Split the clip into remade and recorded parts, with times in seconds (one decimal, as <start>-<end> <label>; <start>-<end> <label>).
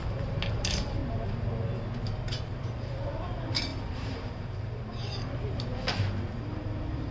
0.0-1.0 remade; 1.0-2.4 recorded; 2.4-5.7 remade; 5.7-6.4 recorded; 6.4-7.1 remade